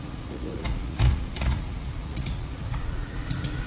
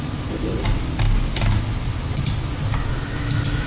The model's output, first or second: first